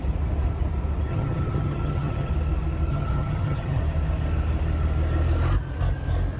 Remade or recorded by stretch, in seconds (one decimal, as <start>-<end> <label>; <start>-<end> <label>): 0.0-1.1 recorded; 1.1-2.3 remade; 2.3-2.9 recorded; 2.9-3.8 remade; 3.8-6.4 recorded